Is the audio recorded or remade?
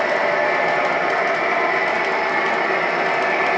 recorded